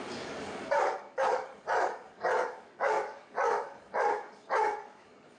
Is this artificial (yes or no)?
yes